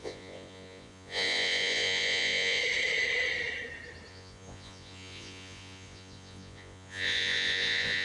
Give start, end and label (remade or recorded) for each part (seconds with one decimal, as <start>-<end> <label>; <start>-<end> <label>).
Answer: 0.0-2.6 remade; 2.6-4.1 recorded; 4.1-8.0 remade